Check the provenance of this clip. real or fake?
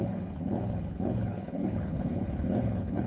fake